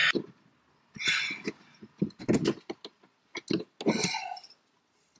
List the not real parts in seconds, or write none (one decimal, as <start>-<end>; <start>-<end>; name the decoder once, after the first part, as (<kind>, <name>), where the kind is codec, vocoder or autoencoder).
none